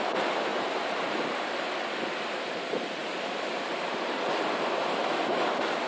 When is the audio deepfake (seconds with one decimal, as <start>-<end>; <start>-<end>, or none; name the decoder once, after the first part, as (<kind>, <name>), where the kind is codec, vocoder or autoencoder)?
0.5-1.7 (vocoder, BigVGAN v2)